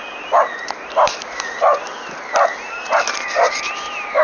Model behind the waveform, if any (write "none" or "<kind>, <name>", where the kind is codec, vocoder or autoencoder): none